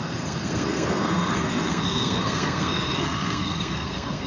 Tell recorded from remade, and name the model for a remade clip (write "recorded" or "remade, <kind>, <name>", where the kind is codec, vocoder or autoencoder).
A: remade, codec, SNAC